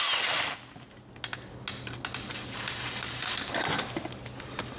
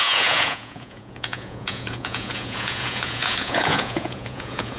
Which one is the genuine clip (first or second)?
first